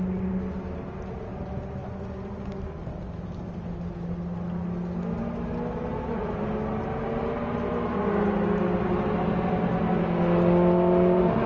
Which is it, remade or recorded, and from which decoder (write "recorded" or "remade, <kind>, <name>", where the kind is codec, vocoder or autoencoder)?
recorded